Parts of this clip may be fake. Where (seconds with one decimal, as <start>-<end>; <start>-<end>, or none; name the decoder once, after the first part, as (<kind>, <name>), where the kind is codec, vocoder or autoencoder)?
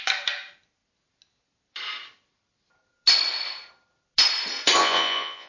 4.8-5.5 (vocoder, Vocos)